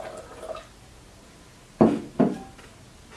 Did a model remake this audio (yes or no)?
no